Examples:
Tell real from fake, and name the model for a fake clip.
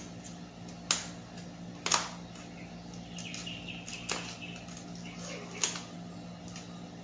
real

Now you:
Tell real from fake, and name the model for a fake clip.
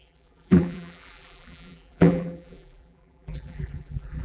fake, vocoder, BigVGAN v2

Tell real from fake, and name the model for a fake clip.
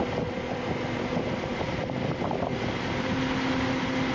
real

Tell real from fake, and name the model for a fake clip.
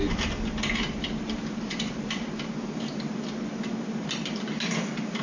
real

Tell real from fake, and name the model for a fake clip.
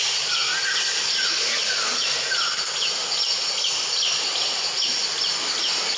real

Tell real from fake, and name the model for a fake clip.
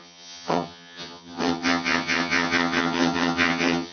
fake, vocoder, HiFi-GAN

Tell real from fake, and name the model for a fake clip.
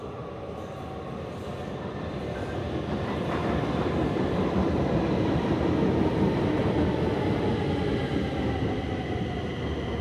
real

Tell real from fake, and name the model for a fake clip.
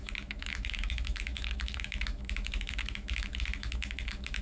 fake, autoencoder, DAC-VAE